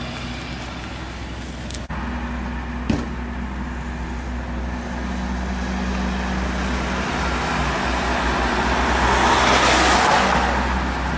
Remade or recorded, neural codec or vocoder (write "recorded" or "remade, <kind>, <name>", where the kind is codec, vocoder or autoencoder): recorded